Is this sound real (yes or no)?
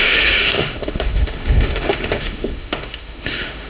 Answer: no